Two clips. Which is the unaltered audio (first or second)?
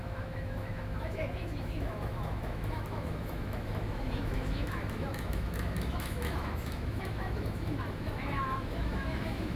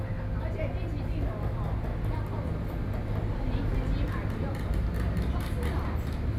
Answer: second